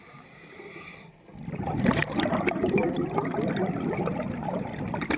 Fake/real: real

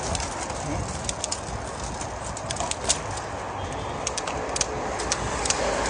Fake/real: real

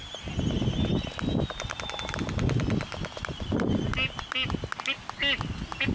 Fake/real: real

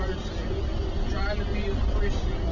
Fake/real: real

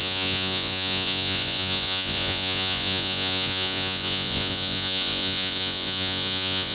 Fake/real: fake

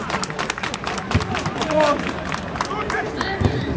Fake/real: real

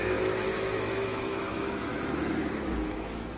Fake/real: fake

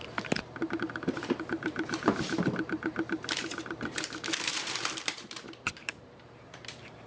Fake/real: fake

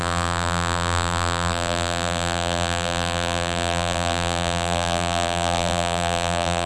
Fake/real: fake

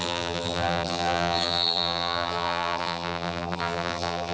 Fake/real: fake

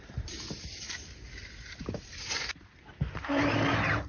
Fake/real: real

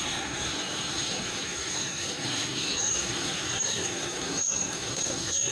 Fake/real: fake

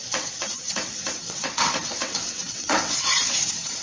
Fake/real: fake